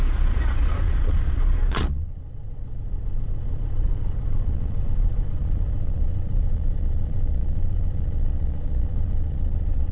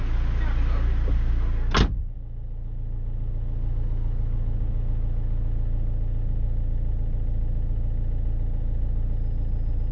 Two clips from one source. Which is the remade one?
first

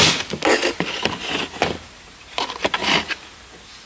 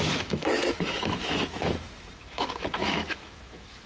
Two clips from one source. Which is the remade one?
second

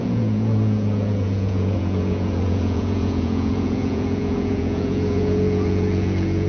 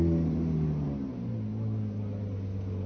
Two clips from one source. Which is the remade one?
first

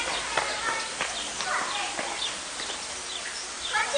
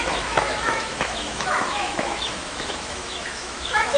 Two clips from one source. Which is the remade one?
second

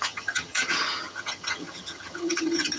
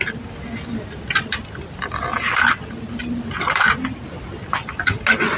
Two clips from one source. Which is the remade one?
first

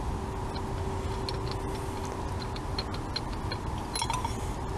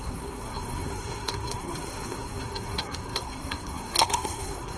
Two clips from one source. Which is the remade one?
second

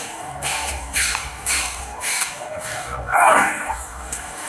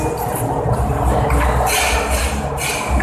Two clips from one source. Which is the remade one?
first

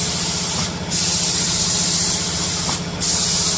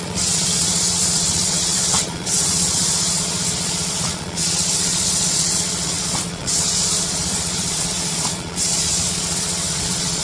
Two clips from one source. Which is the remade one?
second